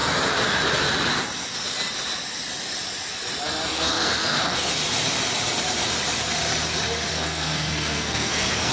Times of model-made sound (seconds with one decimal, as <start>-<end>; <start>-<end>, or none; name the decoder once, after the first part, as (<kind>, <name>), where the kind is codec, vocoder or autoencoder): 3.7-4.7 (codec, SNAC); 7.1-8.7